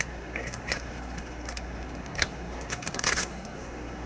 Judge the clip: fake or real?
fake